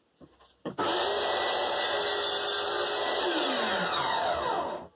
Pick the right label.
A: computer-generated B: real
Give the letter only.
B